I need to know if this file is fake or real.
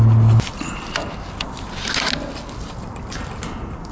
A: real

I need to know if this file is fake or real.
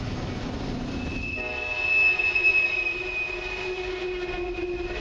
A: real